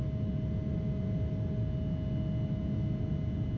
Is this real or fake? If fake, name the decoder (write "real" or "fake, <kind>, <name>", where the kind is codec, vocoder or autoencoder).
real